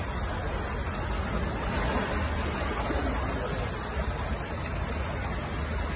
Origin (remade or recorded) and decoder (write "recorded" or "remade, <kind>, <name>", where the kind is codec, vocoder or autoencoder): recorded